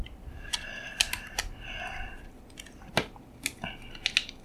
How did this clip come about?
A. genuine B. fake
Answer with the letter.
A